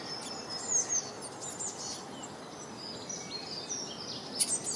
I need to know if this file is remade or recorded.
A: recorded